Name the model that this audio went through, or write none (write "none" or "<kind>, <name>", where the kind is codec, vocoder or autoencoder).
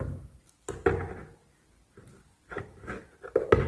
none